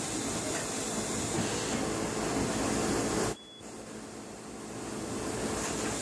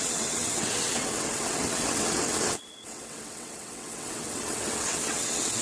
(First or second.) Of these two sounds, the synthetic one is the second